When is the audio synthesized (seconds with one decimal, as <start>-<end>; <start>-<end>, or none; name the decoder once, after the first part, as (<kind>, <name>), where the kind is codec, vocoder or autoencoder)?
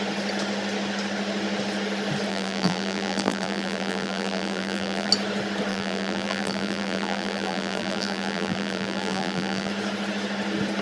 2.3-5.1 (vocoder, BigVGAN v2); 5.7-9.7